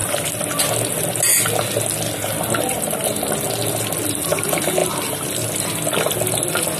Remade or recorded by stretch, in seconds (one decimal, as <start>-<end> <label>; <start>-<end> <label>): 0.0-6.8 recorded